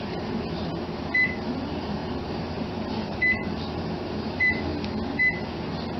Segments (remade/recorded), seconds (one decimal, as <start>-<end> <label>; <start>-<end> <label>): 0.0-0.7 remade; 0.7-1.5 recorded; 1.5-4.7 remade; 4.7-6.0 recorded